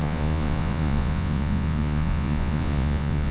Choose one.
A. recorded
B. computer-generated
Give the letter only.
B